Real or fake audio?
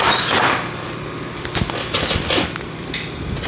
real